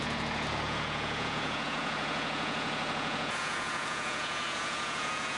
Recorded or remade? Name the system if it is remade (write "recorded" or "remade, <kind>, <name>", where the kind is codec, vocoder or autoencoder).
remade, vocoder, Vocos